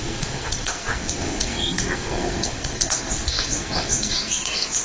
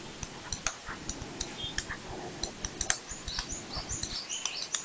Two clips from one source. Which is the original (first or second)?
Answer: second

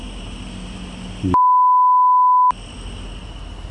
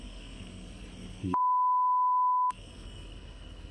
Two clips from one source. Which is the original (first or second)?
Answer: first